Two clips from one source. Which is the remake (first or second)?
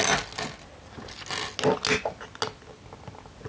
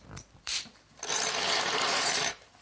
second